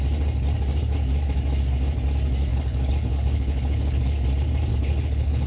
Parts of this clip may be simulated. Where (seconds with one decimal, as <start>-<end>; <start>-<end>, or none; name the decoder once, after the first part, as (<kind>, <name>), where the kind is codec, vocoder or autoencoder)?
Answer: 2.5-4.0 (codec, HILCodec); 4.7-5.5